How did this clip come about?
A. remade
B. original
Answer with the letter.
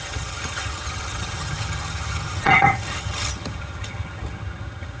A